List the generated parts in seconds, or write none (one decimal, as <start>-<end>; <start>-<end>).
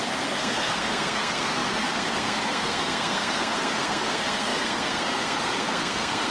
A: 0.0-6.3